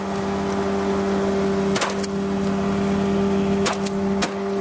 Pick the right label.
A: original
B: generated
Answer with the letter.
A